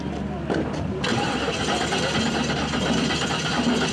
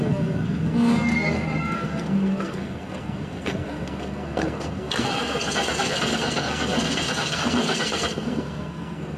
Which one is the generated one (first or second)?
second